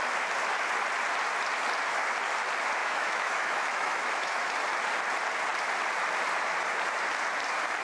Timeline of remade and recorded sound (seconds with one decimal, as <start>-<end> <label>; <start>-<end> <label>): 0.0-2.8 recorded; 2.8-4.5 remade; 4.5-7.8 recorded